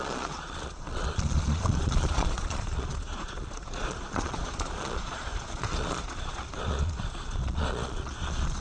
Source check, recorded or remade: remade